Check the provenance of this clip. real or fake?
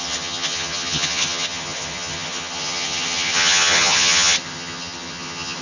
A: fake